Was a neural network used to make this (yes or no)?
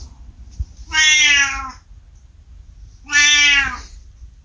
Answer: no